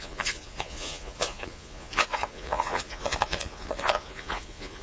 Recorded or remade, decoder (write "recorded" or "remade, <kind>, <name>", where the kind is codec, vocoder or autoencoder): remade, vocoder, Vocos